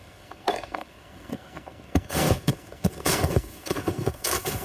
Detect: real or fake fake